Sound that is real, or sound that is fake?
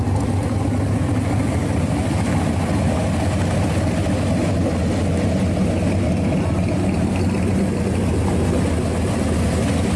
real